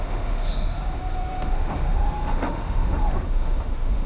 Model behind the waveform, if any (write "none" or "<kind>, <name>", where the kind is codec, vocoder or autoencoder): autoencoder, DAC-VAE